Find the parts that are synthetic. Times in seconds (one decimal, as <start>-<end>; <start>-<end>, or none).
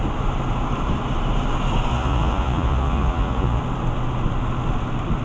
1.9-3.6